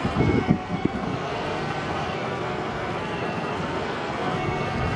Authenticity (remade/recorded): remade